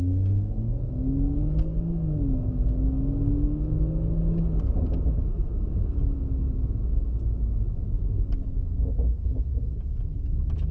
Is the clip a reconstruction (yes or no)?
no